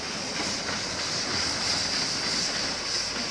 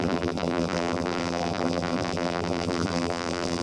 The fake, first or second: second